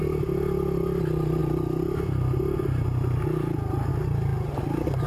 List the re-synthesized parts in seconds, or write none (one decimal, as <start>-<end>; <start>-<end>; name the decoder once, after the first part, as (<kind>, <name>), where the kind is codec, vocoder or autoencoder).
none